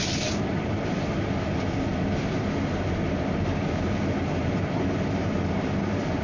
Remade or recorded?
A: recorded